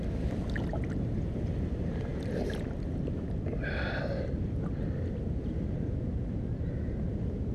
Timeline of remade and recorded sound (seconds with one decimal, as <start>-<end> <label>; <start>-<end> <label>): 0.0-7.5 recorded